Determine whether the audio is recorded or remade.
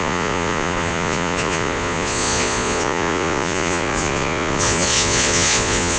remade